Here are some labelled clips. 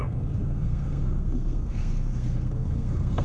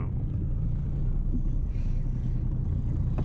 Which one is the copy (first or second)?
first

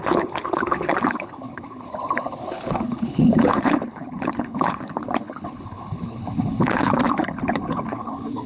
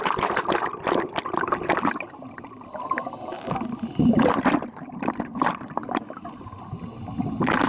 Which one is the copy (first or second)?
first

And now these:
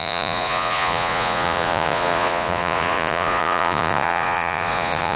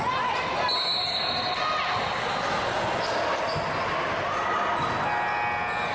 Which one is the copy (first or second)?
first